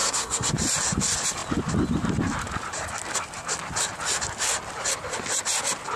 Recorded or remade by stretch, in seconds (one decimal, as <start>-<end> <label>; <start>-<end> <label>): 0.0-0.5 remade; 0.5-6.0 recorded